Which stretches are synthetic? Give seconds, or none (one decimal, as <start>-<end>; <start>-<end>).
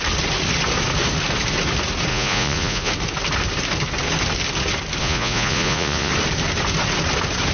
2.1-2.9; 5.0-6.1